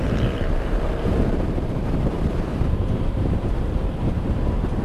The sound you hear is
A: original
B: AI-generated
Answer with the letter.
B